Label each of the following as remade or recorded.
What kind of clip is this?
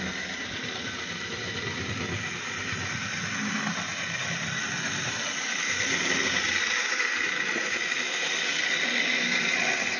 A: recorded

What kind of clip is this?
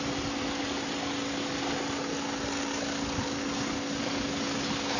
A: recorded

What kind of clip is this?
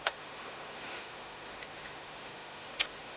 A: remade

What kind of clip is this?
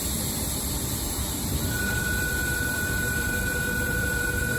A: remade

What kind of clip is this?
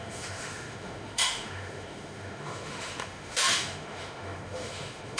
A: remade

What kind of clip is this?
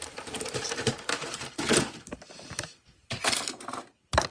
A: remade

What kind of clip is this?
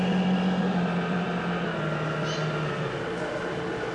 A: recorded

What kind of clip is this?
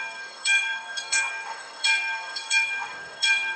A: remade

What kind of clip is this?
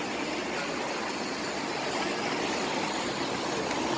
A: recorded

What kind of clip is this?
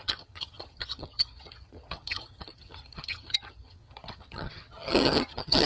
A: remade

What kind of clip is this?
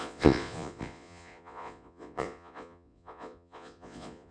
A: remade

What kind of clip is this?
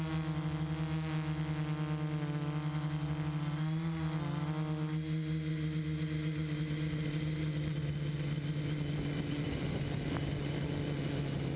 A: recorded